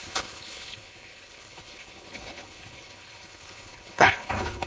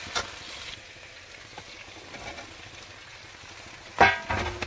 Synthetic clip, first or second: first